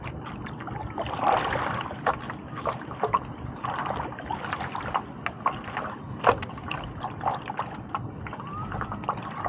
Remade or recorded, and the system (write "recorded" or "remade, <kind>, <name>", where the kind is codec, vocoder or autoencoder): remade, vocoder, BigVGAN v2